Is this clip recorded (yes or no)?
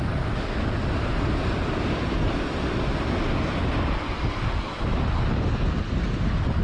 yes